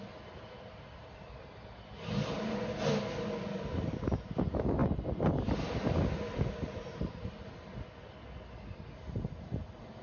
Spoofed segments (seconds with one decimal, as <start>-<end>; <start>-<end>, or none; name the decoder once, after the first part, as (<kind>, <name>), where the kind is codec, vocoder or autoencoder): none